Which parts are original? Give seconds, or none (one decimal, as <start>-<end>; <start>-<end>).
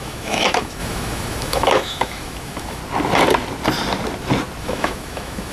2.8-4.6